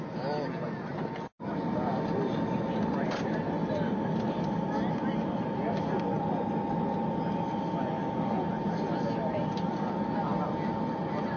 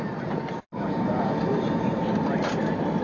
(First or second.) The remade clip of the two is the second